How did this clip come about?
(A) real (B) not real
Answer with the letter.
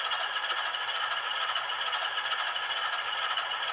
A